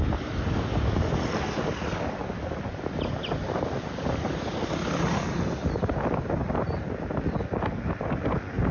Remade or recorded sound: recorded